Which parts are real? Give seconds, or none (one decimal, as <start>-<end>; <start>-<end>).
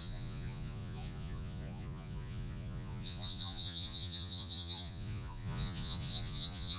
none